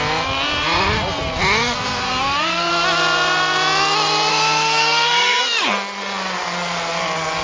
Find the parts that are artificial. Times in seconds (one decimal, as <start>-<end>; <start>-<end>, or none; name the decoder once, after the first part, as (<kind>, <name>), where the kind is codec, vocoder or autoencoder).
2.0-2.7 (codec, SNAC); 4.3-5.4